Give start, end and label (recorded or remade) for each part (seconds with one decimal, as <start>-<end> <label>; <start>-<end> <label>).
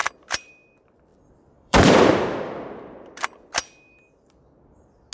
0.0-0.5 remade; 0.5-1.1 recorded; 1.1-3.1 remade; 3.1-5.1 recorded